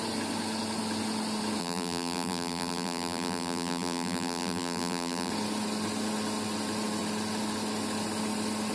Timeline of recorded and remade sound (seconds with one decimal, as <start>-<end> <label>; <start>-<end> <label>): 0.0-1.6 recorded; 1.6-5.3 remade; 5.3-8.7 recorded